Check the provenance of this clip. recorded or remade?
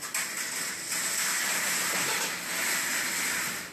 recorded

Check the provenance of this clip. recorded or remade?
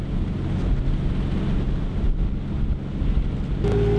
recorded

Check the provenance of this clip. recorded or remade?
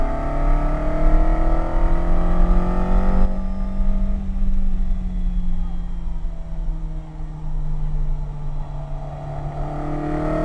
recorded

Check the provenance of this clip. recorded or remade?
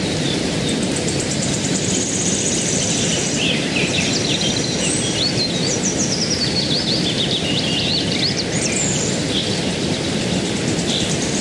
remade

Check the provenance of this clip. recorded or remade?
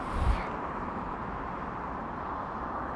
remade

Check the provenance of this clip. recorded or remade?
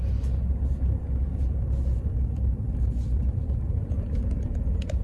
remade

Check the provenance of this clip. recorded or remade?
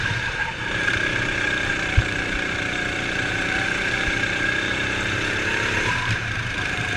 remade